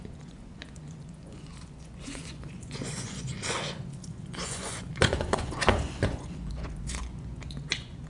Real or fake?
fake